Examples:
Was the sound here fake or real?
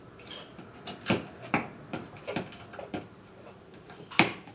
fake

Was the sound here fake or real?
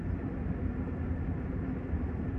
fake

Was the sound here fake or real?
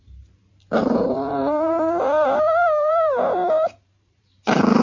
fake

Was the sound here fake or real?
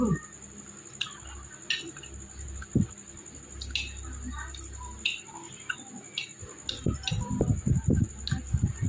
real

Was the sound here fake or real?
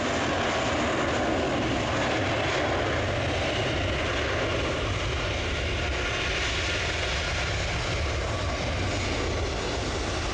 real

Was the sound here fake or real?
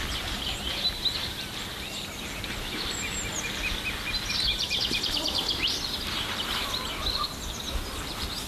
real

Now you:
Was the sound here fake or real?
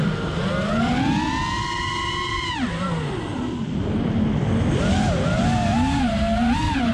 real